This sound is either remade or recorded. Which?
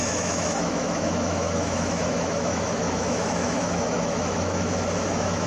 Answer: remade